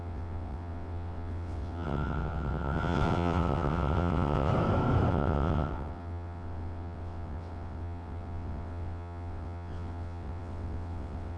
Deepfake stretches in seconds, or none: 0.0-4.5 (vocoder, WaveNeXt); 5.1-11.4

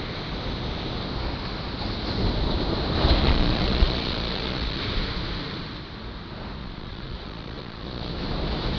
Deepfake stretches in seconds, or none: 3.2-4.8 (vocoder, Vocos); 6.6-8.1

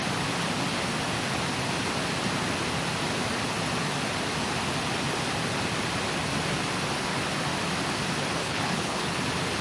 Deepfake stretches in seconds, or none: 8.4-9.2 (codec, HILCodec)

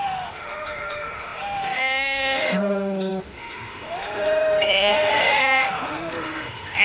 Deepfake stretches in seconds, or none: 0.0-6.8 (autoencoder, DAC-VAE)

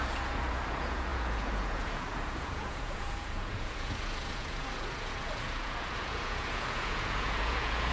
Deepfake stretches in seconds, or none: 0.0-7.9 (vocoder, Vocos)

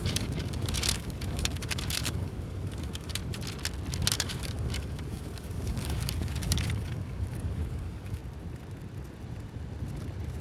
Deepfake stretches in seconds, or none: 0.0-3.2 (codec, DAC); 4.1-8.2

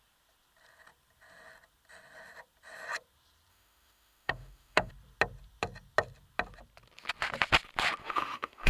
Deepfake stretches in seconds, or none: 3.5-4.9 (autoencoder, DAC-VAE); 8.0-8.7

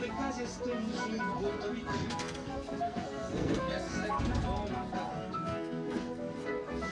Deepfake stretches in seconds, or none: 1.8-4.2 (codec, SNAC); 5.1-6.5